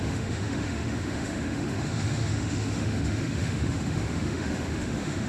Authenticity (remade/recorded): remade